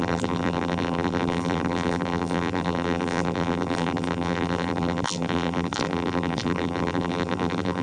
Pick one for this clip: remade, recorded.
remade